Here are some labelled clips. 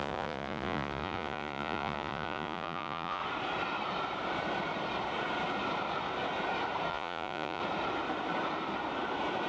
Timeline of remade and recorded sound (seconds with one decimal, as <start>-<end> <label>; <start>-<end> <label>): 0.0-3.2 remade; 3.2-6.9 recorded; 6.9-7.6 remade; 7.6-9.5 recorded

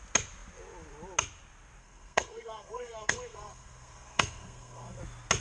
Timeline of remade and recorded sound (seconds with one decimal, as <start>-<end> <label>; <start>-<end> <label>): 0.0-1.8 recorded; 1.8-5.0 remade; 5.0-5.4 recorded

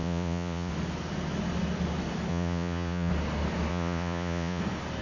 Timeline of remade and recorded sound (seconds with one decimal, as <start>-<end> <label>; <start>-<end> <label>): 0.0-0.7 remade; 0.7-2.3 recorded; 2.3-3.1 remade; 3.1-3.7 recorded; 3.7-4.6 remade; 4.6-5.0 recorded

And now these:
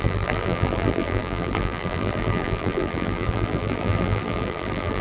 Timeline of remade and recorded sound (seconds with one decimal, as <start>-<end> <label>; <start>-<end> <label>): 0.0-5.0 remade

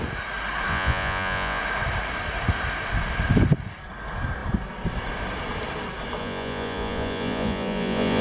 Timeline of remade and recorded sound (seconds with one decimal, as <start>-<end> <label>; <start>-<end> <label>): 0.0-0.7 recorded; 0.7-1.6 remade; 1.6-6.2 recorded; 6.2-8.2 remade